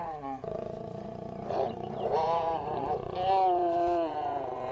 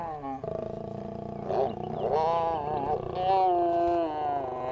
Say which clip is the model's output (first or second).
first